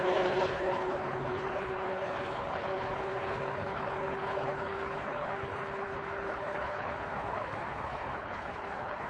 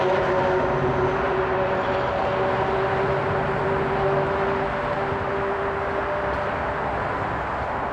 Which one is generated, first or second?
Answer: first